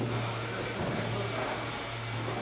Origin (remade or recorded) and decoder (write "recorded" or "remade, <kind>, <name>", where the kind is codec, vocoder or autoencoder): recorded